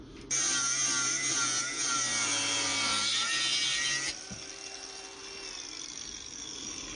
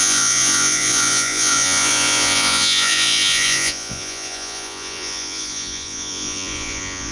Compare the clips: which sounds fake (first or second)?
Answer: second